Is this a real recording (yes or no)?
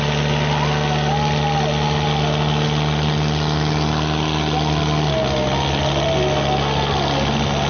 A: yes